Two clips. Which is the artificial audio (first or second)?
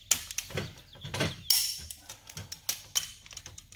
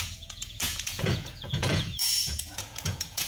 second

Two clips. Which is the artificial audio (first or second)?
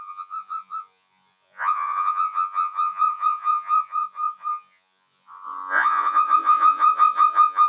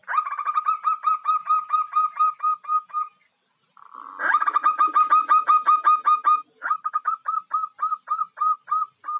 first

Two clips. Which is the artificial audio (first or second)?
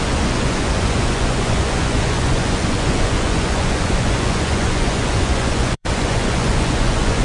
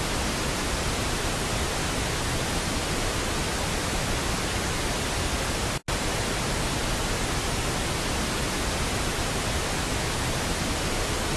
first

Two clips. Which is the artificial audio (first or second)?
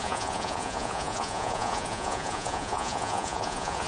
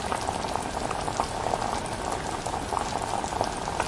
first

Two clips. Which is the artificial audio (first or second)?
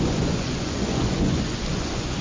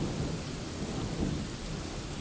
first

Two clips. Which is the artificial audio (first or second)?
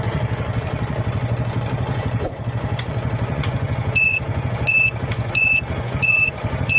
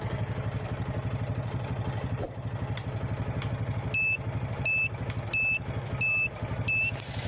first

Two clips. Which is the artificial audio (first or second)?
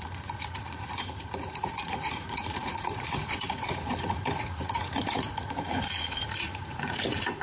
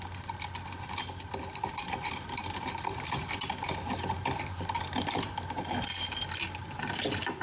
first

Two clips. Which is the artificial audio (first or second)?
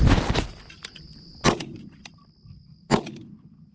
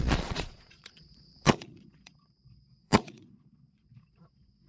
second